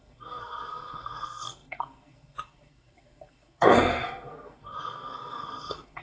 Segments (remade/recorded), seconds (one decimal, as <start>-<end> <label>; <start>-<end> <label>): 0.0-6.0 remade